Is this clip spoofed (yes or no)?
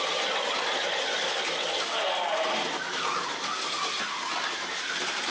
no